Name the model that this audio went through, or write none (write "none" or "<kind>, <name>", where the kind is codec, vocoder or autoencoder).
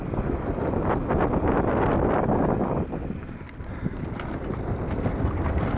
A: none